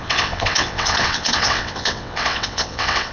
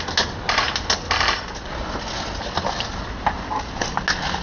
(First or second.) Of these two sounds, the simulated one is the first